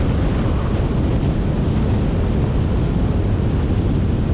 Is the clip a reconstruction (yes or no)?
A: no